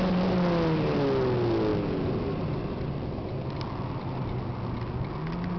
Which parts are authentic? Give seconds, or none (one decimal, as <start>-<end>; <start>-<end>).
0.0-5.6